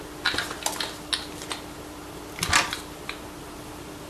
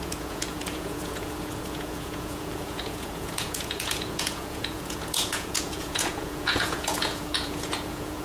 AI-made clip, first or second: second